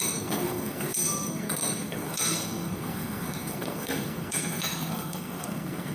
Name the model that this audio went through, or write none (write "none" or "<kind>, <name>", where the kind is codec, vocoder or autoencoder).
codec, SNAC